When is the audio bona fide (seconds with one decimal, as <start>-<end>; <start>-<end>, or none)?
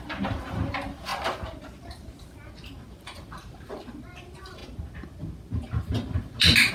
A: 4.6-6.7